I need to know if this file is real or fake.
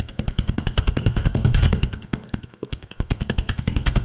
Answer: fake